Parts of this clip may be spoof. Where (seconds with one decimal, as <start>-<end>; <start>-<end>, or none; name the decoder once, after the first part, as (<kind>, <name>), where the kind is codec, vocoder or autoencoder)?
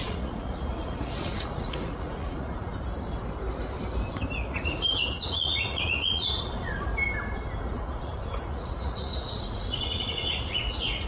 0.0-2.7 (vocoder, Vocos); 4.5-6.9; 7.6-11.1